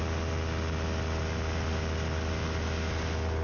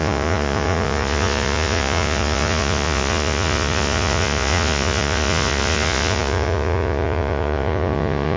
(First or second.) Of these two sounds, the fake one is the second